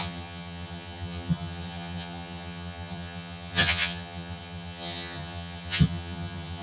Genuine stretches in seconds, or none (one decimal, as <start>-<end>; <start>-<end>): none